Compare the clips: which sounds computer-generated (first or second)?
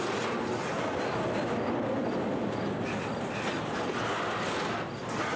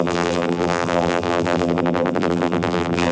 second